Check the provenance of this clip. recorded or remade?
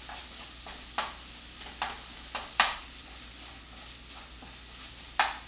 recorded